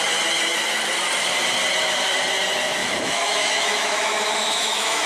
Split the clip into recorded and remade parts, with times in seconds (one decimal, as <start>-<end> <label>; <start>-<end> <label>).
0.0-2.8 recorded; 2.8-5.1 remade